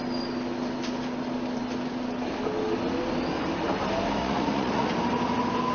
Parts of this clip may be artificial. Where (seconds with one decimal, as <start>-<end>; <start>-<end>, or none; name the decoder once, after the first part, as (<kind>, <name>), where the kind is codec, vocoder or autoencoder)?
4.2-4.9 (vocoder, Vocos)